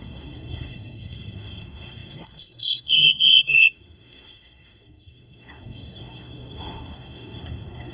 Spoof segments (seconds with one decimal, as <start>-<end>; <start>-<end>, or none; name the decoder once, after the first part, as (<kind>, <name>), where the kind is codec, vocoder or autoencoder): 0.0-7.9 (codec, SNAC)

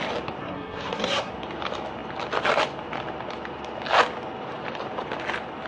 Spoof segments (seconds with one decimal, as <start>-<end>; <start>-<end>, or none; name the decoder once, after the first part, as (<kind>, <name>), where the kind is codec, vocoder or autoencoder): 0.4-1.3 (codec, SNAC)

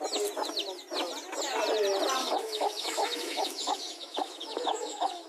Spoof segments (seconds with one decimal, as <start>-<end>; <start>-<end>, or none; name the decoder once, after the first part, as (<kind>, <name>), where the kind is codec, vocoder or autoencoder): 2.2-5.3 (autoencoder, DAC-VAE)

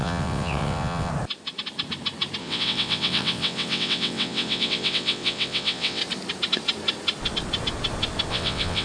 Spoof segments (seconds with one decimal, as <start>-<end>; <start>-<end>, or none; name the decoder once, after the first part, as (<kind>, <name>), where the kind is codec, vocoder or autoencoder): 0.0-1.1 (vocoder, WaveNeXt); 2.4-6.0; 8.3-8.8

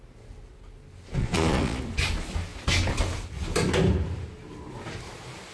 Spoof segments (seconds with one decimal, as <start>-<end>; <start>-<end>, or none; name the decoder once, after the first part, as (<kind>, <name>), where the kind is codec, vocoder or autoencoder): 1.2-1.8 (vocoder, Vocos)

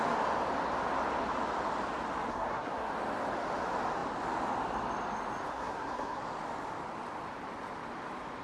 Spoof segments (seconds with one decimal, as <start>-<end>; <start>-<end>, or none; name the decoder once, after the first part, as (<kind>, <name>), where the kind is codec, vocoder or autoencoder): 2.3-2.9 (codec, SNAC); 5.5-6.2